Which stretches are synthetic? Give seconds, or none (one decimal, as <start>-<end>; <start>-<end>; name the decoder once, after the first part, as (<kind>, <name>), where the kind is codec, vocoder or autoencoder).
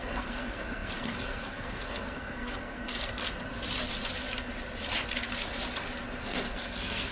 0.0-3.2 (codec, SNAC); 6.2-7.1